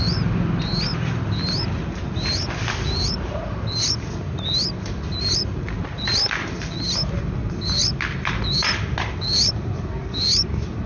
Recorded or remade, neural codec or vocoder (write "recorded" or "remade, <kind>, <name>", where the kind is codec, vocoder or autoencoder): recorded